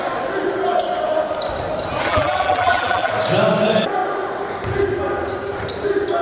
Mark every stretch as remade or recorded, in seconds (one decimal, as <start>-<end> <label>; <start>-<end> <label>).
0.0-2.1 recorded; 2.1-3.1 remade; 3.1-6.2 recorded